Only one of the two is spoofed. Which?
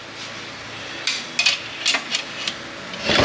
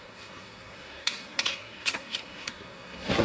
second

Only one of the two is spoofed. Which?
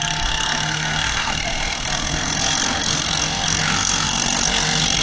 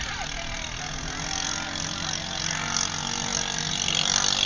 first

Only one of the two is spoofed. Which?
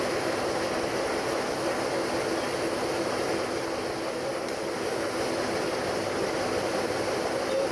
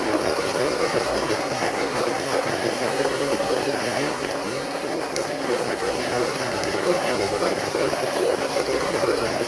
second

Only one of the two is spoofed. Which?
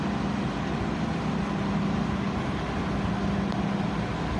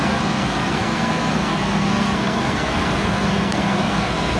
second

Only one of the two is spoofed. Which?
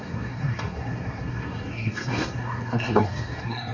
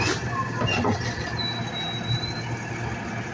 first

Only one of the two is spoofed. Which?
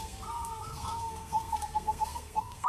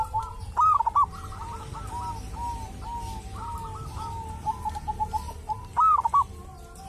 first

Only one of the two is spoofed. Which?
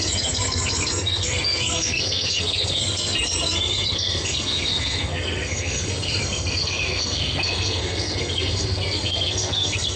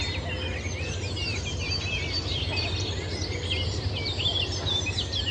first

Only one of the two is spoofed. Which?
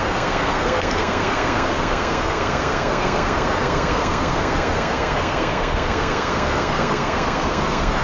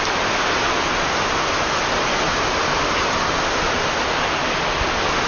first